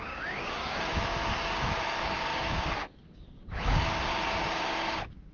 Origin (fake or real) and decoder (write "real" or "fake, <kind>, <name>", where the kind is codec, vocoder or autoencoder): fake, codec, DAC